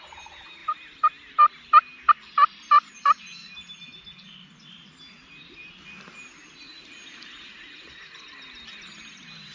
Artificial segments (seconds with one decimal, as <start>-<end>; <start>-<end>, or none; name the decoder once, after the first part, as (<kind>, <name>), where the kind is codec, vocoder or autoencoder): none